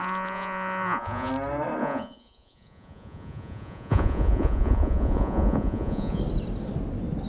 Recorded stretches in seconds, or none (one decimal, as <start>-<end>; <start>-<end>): 1.3-1.8; 6.2-7.3